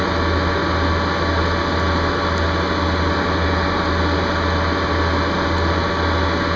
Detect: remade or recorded recorded